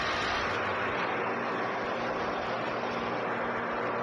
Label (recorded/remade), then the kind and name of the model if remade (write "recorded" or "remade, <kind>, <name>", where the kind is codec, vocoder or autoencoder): recorded